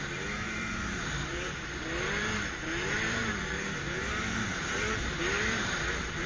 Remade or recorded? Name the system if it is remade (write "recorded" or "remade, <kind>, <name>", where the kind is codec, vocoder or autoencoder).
remade, vocoder, BigVGAN v2